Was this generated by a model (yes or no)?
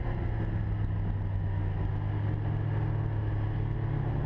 no